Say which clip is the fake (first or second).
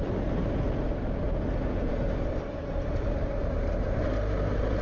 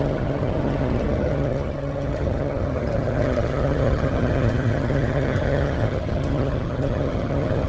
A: second